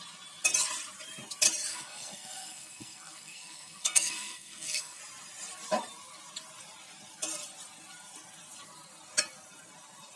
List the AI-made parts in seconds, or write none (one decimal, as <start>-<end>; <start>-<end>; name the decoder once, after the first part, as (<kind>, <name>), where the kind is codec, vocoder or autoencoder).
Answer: 1.7-5.0 (codec, SNAC)